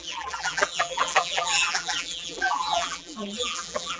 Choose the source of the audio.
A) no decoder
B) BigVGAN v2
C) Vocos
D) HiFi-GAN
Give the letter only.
B